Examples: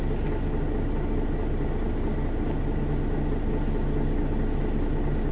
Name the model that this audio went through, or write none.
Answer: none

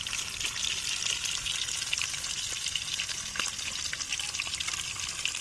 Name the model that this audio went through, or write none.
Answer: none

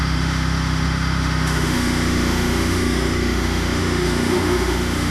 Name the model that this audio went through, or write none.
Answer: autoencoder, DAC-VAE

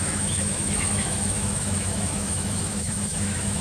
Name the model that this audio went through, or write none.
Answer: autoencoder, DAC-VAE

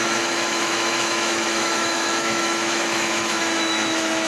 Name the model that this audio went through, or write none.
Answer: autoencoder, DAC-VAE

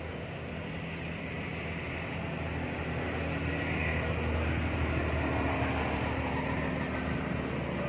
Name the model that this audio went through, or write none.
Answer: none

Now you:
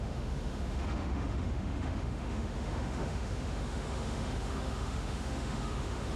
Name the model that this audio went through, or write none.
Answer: autoencoder, DAC-VAE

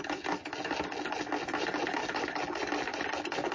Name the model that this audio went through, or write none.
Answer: none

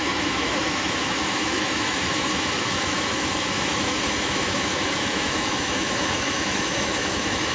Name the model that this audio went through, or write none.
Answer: autoencoder, DAC-VAE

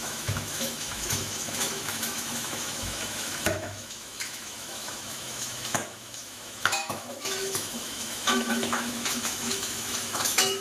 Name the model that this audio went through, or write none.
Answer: autoencoder, DAC-VAE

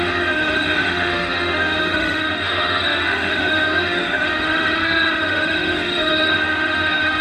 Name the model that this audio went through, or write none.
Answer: autoencoder, DAC-VAE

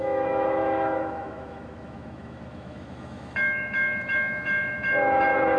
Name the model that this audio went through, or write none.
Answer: autoencoder, DAC-VAE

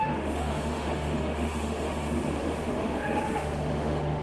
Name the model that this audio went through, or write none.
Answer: autoencoder, DAC-VAE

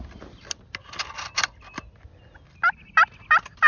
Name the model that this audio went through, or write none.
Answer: none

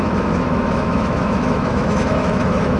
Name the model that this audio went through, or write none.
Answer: autoencoder, DAC-VAE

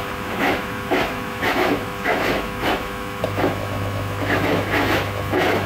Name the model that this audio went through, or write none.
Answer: autoencoder, DAC-VAE